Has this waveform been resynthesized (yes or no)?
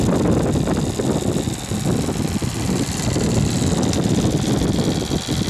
no